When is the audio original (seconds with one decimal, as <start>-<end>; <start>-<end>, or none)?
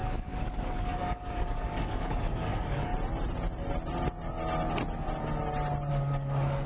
2.9-5.9